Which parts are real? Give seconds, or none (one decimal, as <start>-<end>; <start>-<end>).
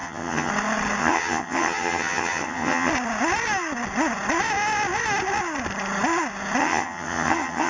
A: 0.5-1.0; 2.9-6.6